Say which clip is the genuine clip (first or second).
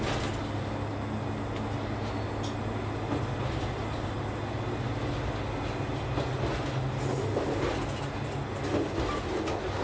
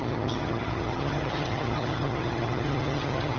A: first